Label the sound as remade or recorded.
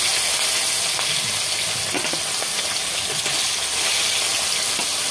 recorded